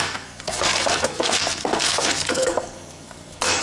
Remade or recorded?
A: remade